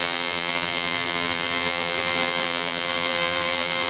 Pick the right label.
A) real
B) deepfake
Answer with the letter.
B